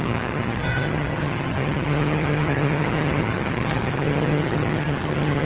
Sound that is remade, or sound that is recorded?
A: remade